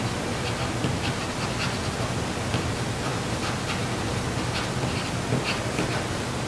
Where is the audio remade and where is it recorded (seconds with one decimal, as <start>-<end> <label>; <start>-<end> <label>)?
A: 0.0-6.5 recorded